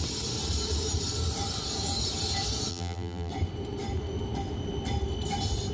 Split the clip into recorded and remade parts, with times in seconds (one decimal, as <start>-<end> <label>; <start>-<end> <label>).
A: 0.0-2.7 recorded; 2.7-3.3 remade; 3.3-5.7 recorded